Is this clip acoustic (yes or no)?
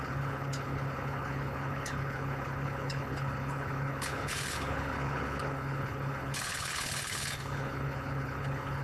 no